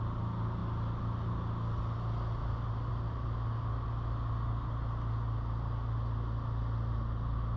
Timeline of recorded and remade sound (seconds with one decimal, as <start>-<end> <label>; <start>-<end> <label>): 0.0-7.6 recorded